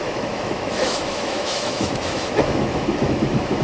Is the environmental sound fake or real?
fake